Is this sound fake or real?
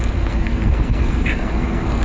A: fake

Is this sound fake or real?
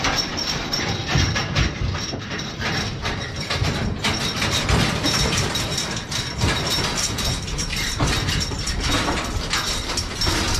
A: real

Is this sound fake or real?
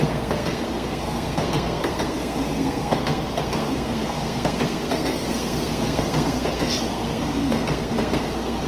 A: fake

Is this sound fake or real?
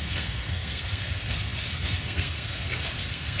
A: fake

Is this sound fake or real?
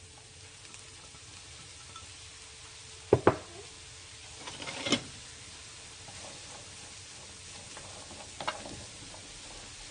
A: real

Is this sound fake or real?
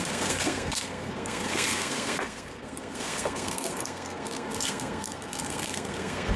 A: fake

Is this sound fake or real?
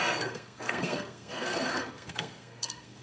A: fake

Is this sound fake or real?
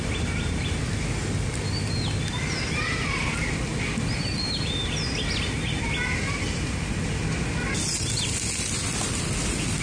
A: real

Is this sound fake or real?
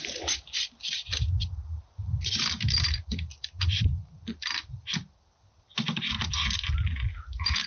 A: real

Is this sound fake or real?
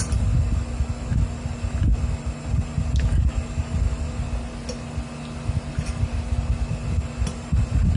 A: real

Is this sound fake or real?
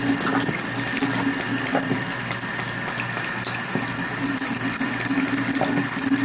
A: real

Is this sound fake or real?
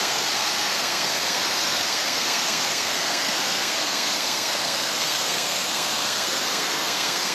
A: fake